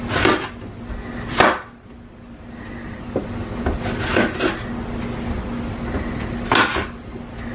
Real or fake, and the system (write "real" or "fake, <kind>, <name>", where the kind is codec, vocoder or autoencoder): real